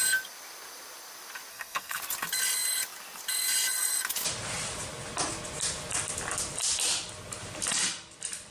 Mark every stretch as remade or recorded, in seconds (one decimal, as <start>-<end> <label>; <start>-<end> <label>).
0.0-1.5 recorded; 1.5-2.0 remade; 2.0-8.5 recorded